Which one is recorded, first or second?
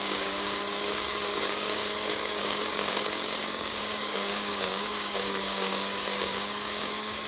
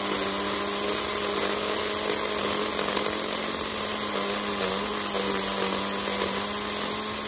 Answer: second